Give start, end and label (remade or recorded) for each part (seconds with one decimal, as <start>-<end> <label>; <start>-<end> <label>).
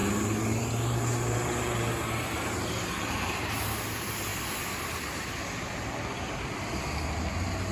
0.0-0.6 recorded; 0.6-4.3 remade; 4.3-7.7 recorded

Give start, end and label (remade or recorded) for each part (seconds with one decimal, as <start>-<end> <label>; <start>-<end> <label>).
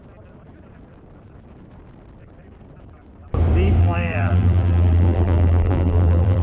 0.0-3.8 recorded; 3.8-6.4 remade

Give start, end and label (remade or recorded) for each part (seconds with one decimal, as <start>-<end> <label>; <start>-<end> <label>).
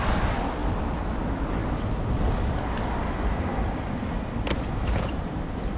0.0-0.6 remade; 0.6-1.2 recorded; 1.2-1.6 remade; 1.6-3.1 recorded; 3.1-3.5 remade; 3.5-4.5 recorded; 4.5-5.8 remade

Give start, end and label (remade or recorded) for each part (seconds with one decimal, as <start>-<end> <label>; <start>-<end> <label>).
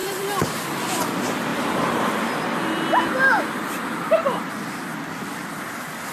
0.0-0.5 remade; 0.5-6.1 recorded